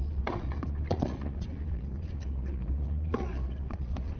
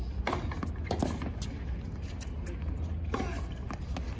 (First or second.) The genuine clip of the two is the second